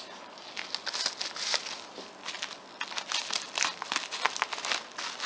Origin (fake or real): real